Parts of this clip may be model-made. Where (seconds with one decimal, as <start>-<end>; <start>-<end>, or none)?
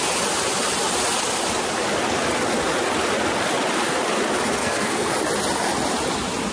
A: 4.6-5.1